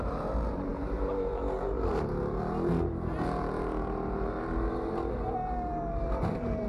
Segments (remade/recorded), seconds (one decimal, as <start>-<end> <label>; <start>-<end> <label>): 0.0-6.7 remade

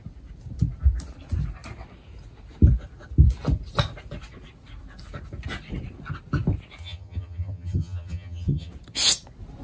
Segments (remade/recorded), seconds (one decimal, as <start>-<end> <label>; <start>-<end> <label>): 0.0-6.8 recorded; 6.8-8.7 remade; 8.7-9.6 recorded

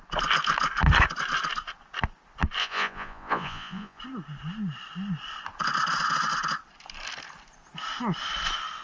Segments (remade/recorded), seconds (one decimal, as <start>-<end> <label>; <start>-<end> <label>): 0.0-2.6 recorded; 2.6-4.0 remade; 4.0-8.8 recorded

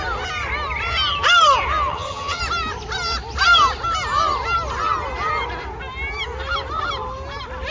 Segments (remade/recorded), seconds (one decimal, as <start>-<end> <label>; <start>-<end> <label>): 0.0-1.9 recorded; 1.9-2.4 remade; 2.4-7.7 recorded

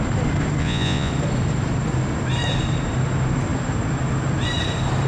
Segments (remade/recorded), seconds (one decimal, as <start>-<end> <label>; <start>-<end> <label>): 0.0-0.6 recorded; 0.6-1.1 remade; 1.1-5.1 recorded

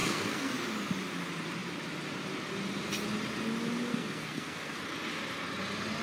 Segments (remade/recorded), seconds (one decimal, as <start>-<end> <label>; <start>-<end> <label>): 0.0-0.5 remade; 0.5-3.9 recorded; 3.9-4.8 remade; 4.8-6.0 recorded

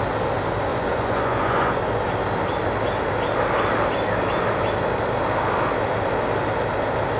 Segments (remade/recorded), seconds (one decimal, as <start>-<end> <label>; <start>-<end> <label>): 0.0-0.7 recorded; 0.7-1.8 remade; 1.8-7.2 recorded